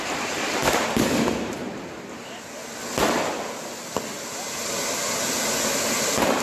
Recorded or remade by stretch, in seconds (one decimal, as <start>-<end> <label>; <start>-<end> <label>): 0.0-6.4 recorded